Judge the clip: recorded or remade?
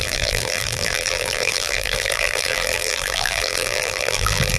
remade